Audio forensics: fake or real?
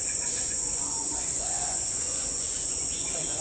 fake